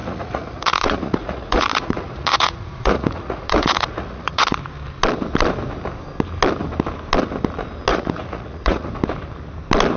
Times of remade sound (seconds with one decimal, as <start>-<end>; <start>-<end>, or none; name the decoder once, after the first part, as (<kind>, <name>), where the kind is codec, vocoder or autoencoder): 0.0-4.6 (vocoder, Vocos); 7.9-8.9